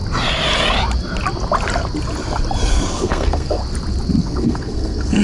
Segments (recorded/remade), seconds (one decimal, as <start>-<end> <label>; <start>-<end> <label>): 0.0-2.7 recorded; 2.7-3.6 remade; 3.6-4.2 recorded; 4.2-5.2 remade